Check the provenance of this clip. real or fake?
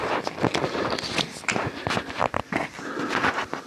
fake